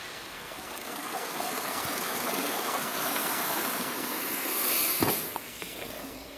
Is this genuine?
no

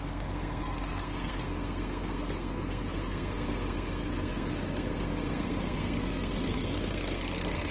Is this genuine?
no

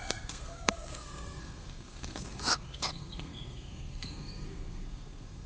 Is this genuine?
no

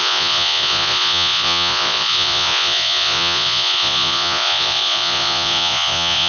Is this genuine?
no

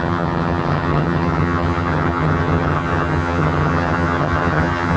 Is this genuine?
no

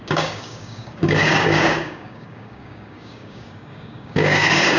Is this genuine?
no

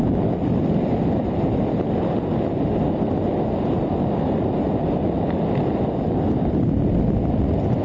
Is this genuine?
yes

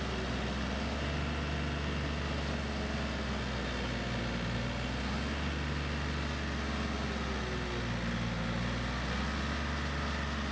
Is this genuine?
yes